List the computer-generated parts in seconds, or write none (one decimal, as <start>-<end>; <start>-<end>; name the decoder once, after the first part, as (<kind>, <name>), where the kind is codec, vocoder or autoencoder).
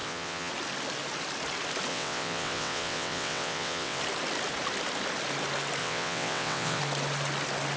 0.0-0.5 (vocoder, WaveNeXt); 1.9-4.0; 5.8-6.8